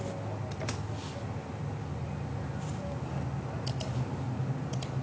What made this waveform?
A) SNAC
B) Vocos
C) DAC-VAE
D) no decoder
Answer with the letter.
D